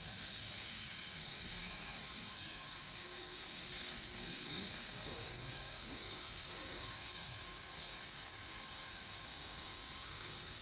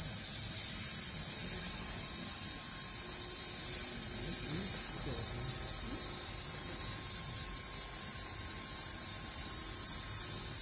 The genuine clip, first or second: second